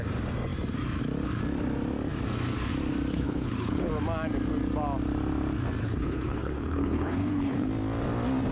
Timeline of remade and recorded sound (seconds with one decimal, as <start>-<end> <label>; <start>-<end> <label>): 0.0-3.1 recorded; 3.1-3.9 remade; 3.9-5.8 recorded; 5.8-7.7 remade; 7.7-8.5 recorded

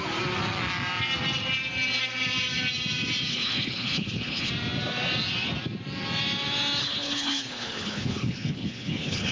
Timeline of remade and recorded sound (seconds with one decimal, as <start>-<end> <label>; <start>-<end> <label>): 0.0-3.3 recorded; 3.3-4.5 remade; 4.5-6.8 recorded; 6.8-9.3 remade